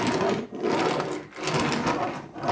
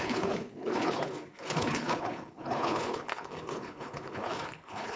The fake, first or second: second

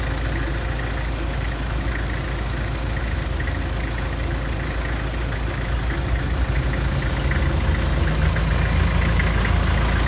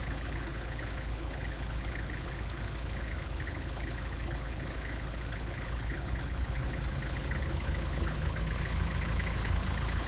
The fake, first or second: second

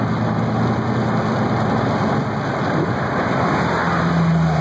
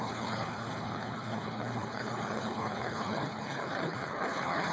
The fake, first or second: second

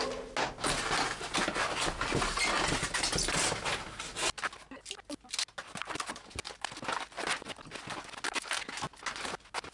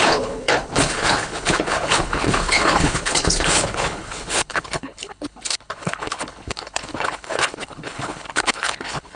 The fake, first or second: second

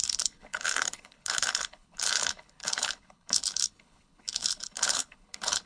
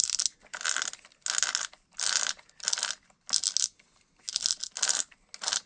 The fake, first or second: first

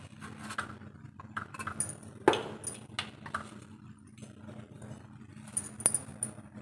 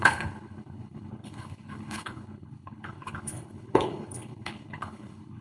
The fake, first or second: second